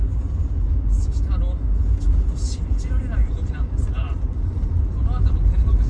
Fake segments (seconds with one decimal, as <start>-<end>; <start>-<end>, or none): 3.2-5.2